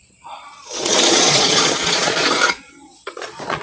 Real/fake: fake